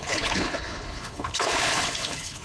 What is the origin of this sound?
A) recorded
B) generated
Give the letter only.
B